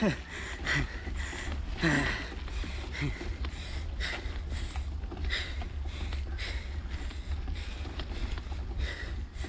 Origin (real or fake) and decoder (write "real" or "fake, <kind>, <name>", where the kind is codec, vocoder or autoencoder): real